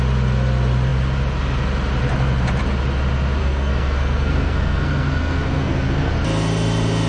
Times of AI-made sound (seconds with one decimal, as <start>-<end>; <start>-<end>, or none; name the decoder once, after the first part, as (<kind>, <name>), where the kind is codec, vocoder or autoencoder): 3.4-6.1 (codec, SNAC)